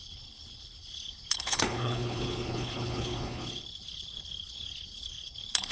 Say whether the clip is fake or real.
fake